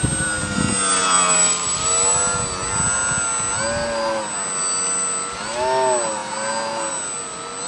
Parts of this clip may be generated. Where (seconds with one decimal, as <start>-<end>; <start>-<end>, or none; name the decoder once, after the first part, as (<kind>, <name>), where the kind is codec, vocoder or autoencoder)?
none